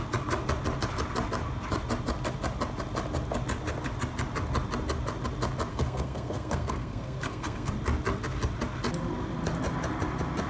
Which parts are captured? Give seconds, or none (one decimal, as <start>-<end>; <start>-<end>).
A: 0.0-5.7; 7.7-10.5